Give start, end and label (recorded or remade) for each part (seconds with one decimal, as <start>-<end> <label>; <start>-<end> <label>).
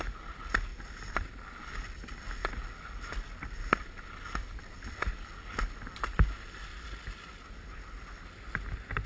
0.0-9.1 recorded